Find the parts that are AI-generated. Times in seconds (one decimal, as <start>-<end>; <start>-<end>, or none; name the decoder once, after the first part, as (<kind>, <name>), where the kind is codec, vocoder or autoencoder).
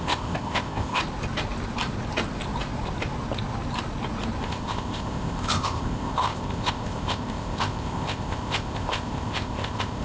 0.0-1.0 (codec, ZipCodec); 4.4-10.0